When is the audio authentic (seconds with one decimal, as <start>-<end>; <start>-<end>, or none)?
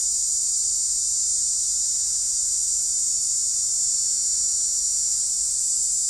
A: 0.0-6.1